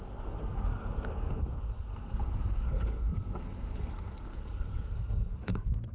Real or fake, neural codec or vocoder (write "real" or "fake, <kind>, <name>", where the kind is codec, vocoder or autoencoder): fake, codec, SNAC